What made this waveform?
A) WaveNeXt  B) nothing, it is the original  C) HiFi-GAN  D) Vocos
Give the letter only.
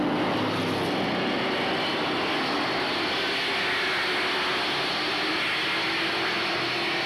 B